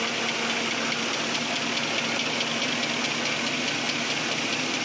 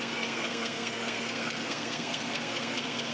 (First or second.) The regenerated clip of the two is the second